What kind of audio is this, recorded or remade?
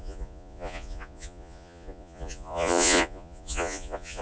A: remade